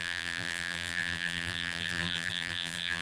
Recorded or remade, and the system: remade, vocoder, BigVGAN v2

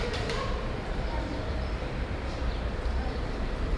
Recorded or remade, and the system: remade, vocoder, BigVGAN v2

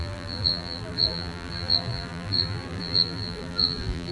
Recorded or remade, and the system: remade, vocoder, BigVGAN v2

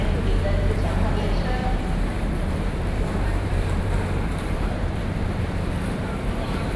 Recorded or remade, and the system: remade, vocoder, BigVGAN v2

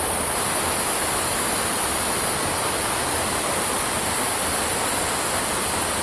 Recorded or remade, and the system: recorded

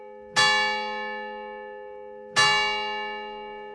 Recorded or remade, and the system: recorded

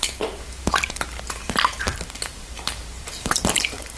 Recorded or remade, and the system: remade, vocoder, BigVGAN v2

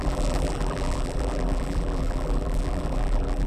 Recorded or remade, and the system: remade, vocoder, BigVGAN v2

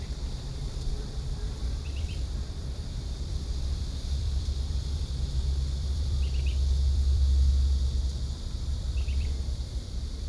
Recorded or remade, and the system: remade, vocoder, BigVGAN v2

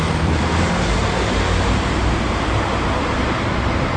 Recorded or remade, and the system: remade, vocoder, BigVGAN v2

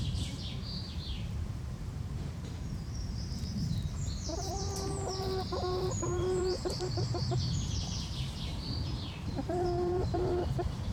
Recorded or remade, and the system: remade, vocoder, BigVGAN v2